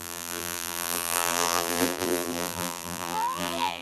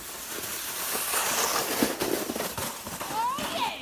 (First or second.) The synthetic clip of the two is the first